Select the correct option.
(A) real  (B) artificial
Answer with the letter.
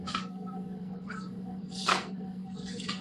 B